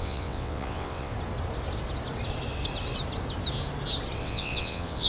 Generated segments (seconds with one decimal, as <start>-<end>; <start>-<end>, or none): 0.0-1.1; 4.2-5.1